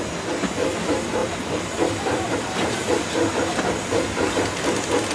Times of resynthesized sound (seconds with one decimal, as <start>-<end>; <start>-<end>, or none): 1.2-4.3